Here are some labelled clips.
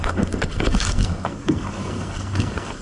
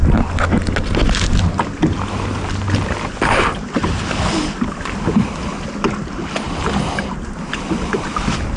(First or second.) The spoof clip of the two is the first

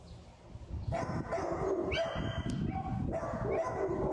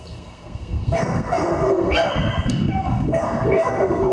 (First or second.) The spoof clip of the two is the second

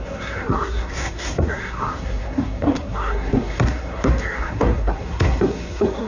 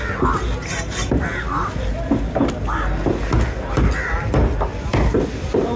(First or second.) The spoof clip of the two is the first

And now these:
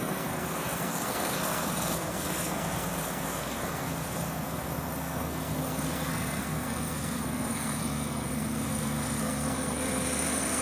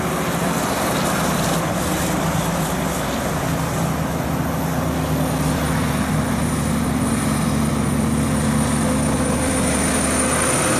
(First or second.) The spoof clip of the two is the first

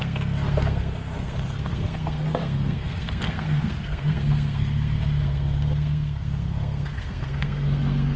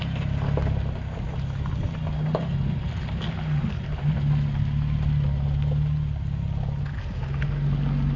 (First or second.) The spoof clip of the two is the first